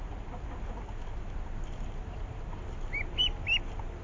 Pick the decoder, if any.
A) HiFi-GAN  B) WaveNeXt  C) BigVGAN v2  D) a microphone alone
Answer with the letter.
D